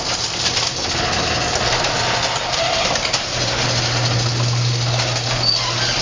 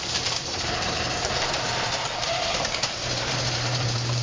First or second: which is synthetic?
second